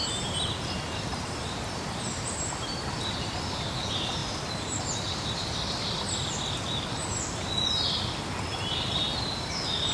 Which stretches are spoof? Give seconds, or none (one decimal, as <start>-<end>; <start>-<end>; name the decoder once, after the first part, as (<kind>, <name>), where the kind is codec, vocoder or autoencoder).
0.0-9.9 (vocoder, BigVGAN v2)